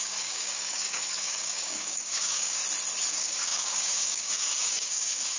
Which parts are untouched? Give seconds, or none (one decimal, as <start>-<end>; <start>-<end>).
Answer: 2.6-3.1